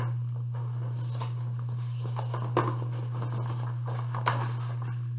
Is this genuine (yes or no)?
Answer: yes